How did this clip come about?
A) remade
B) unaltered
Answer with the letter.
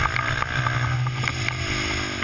B